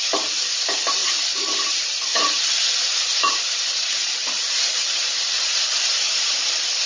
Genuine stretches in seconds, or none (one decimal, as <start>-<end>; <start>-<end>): 0.0-1.0; 1.7-2.1; 3.4-3.8; 6.4-6.9